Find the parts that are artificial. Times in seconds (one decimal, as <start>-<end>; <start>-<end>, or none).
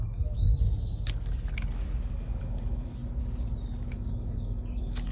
0.0-0.5; 2.0-3.0; 3.9-5.1